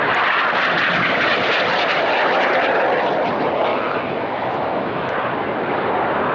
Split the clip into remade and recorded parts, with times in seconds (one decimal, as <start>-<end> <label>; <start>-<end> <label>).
0.0-3.7 recorded; 3.7-5.1 remade; 5.1-6.3 recorded